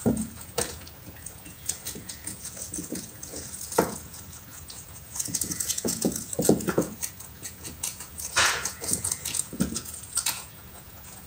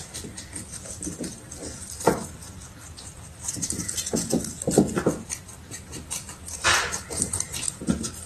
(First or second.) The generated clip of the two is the first